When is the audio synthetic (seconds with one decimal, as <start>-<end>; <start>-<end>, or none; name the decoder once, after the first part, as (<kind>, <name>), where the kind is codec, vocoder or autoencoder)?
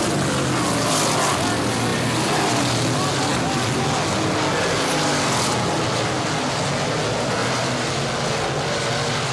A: none